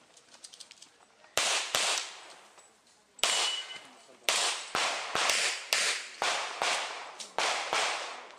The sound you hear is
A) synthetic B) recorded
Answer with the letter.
A